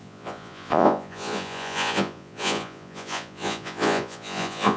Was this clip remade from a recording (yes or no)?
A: yes